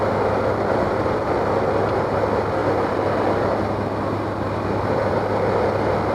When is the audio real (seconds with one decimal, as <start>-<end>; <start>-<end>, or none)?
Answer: 0.0-6.1